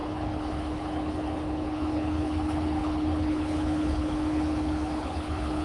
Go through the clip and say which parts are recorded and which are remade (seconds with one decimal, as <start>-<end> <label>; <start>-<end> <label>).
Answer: 0.0-5.6 remade